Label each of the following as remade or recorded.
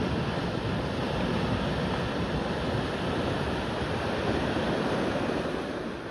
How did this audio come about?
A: recorded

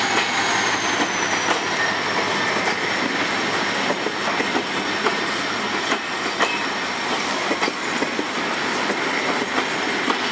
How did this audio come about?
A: recorded